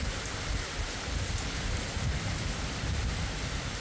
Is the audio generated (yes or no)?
no